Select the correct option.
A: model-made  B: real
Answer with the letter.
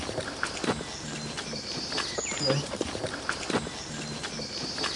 B